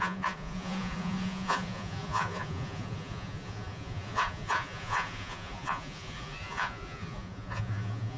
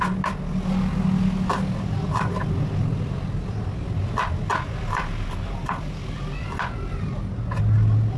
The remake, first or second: first